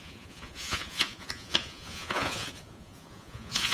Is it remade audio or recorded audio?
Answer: remade